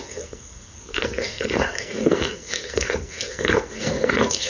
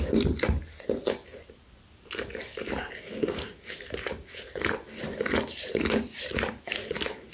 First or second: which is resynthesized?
first